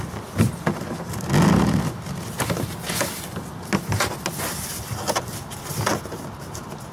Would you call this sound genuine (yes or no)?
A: yes